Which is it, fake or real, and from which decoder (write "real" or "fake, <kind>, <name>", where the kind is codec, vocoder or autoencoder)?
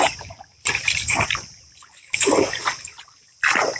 fake, vocoder, BigVGAN v2